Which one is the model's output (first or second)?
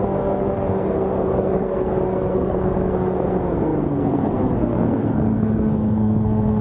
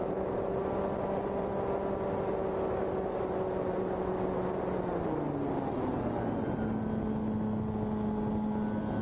first